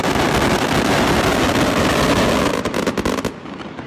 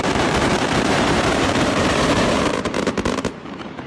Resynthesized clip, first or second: second